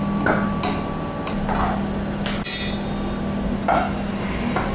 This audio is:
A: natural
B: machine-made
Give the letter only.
A